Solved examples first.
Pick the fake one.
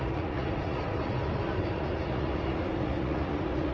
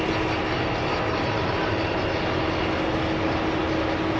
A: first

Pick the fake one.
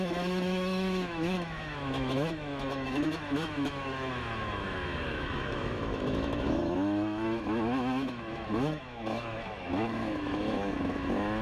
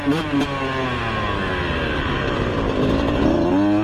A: first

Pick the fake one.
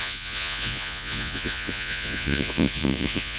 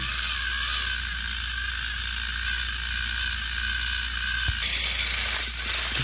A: first